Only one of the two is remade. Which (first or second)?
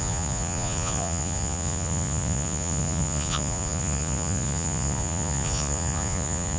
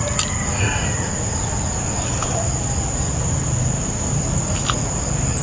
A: first